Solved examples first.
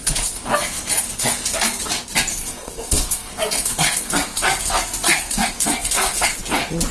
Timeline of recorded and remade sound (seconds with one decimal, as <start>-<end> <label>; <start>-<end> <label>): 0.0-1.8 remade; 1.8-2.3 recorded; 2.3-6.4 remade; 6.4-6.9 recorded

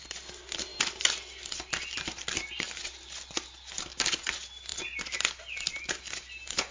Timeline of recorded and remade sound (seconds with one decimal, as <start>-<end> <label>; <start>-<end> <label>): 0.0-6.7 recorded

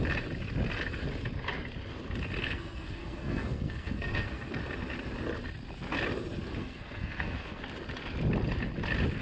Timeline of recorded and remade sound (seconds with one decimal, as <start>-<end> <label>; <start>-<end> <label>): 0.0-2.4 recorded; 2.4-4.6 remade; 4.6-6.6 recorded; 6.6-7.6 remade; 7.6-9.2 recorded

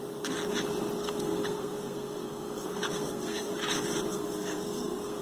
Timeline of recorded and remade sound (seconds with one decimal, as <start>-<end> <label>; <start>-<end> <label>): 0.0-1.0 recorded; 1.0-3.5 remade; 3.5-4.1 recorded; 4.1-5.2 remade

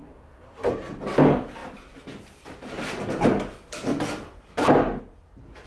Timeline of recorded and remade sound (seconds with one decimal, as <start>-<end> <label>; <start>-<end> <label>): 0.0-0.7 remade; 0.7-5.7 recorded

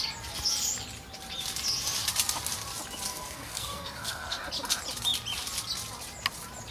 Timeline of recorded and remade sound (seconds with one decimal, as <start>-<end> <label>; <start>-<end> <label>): 0.0-3.1 recorded; 3.1-4.4 remade; 4.4-6.7 recorded

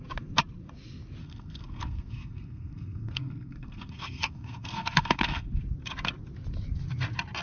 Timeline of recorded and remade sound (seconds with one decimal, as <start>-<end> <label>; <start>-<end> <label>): 0.0-1.2 recorded; 1.2-5.6 remade; 5.6-7.4 recorded